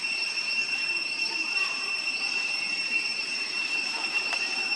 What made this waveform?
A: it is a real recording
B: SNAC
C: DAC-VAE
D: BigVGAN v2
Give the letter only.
D